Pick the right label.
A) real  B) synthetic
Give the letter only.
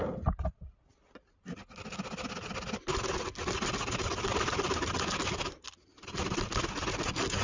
A